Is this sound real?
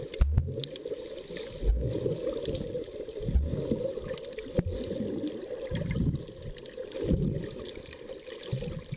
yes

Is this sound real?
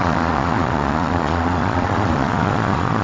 no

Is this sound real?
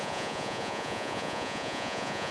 no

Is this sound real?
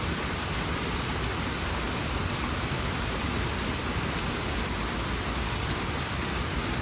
yes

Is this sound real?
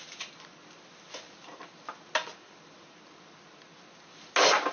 yes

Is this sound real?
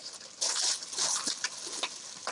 yes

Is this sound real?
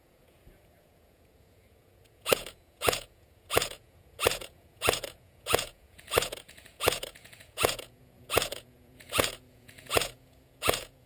no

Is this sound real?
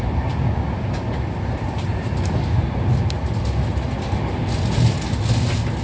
yes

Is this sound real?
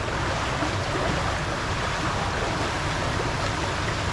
yes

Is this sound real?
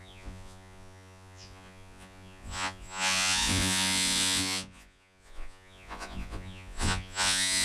no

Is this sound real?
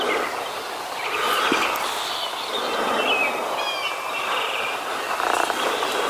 yes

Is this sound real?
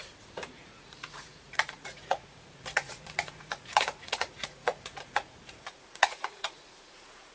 no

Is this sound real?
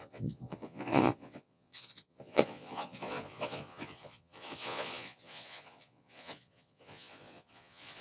no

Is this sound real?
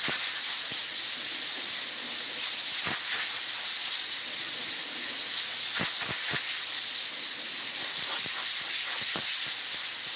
yes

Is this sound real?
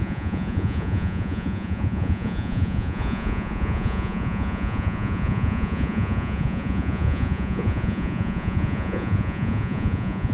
no